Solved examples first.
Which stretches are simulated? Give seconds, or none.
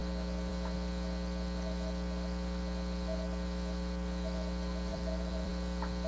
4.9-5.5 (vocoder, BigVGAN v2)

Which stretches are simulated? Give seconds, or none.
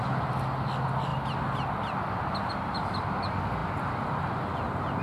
none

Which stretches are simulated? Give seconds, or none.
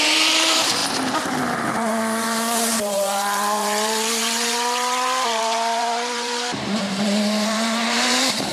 0.0-8.5 (vocoder, BigVGAN v2)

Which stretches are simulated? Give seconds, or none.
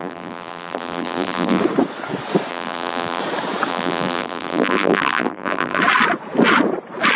0.0-1.6 (vocoder, BigVGAN v2); 2.5-3.2; 3.7-5.8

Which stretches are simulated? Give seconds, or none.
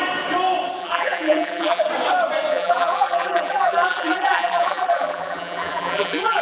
0.8-1.9 (vocoder, BigVGAN v2); 2.5-6.4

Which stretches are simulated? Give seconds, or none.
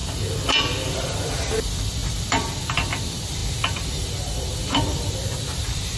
0.9-6.0 (vocoder, BigVGAN v2)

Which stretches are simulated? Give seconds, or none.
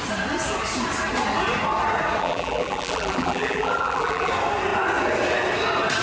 2.2-4.3 (vocoder, BigVGAN v2)